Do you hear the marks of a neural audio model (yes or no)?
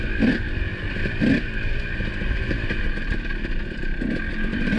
no